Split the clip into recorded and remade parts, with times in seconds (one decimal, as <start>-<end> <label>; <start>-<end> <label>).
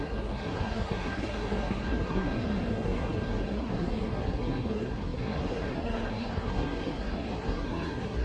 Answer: 0.0-8.2 remade